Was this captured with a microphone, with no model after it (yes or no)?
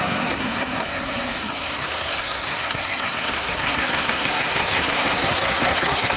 no